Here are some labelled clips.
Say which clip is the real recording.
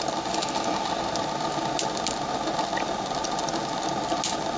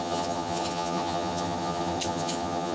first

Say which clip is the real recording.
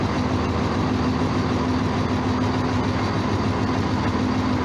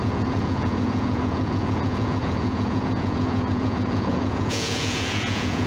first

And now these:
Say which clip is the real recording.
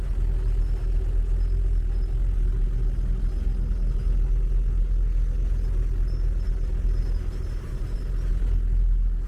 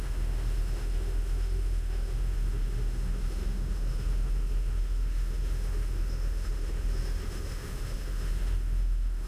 first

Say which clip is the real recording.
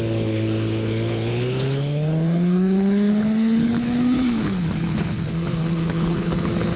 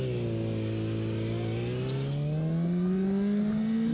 second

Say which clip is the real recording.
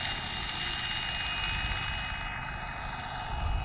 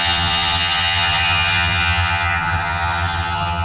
first